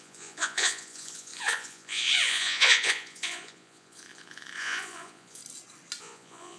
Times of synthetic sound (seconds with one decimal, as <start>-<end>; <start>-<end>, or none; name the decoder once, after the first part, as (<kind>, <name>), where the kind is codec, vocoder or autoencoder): 0.0-5.4 (vocoder, Vocos); 6.0-6.6